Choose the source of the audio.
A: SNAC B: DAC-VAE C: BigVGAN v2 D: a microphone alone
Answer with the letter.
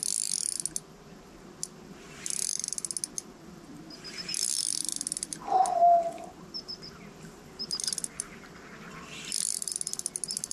D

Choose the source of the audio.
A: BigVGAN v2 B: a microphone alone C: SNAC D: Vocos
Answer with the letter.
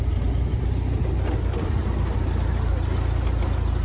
B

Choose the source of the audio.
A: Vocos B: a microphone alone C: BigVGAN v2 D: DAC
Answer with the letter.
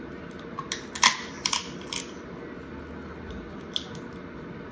B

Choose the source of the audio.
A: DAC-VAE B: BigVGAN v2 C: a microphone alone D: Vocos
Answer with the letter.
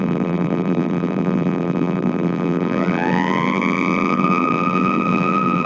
B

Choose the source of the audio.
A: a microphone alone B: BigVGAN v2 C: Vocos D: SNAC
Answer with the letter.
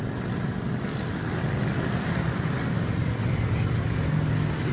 A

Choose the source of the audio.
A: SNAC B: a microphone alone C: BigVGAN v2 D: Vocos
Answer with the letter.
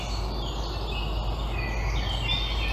B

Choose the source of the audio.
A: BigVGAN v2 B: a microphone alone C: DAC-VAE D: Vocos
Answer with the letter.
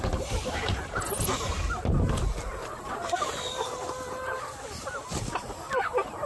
B